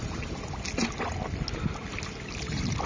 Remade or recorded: recorded